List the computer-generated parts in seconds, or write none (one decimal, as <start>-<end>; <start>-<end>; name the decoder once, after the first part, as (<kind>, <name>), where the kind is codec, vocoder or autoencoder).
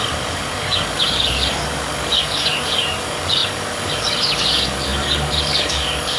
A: 0.0-6.2 (codec, DAC)